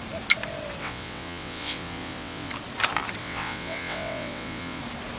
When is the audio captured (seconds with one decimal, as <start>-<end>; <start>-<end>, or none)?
0.0-0.8; 2.5-3.2; 4.8-5.2